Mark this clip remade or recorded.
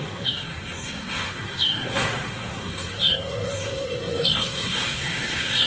remade